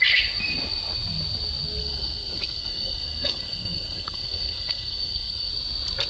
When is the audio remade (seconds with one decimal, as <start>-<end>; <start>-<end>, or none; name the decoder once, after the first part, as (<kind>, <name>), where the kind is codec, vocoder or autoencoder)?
1.8-5.5 (codec, SNAC)